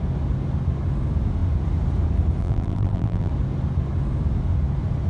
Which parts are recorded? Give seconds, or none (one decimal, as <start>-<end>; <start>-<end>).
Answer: 0.0-2.4; 3.3-5.1